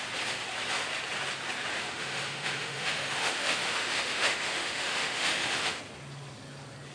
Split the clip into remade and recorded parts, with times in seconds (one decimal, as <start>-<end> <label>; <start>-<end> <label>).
0.0-1.7 recorded; 1.7-5.8 remade; 5.8-6.9 recorded